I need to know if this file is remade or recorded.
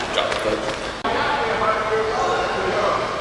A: recorded